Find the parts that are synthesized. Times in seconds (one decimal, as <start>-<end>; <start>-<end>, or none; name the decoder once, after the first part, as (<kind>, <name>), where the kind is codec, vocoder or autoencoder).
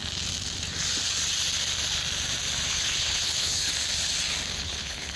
2.7-3.7 (codec, HILCodec); 4.6-5.2